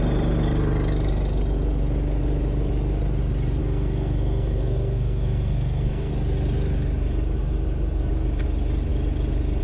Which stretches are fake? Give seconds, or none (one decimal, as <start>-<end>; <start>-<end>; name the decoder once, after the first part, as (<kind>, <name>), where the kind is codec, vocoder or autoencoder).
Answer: 3.6-6.1 (codec, SNAC)